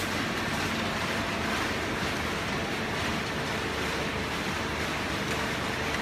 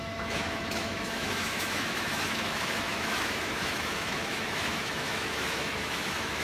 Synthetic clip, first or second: second